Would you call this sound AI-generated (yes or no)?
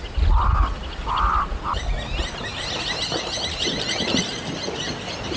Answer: no